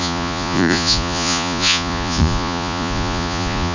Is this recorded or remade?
remade